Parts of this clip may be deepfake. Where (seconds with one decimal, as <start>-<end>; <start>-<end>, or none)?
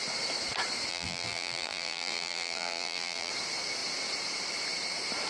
0.9-3.3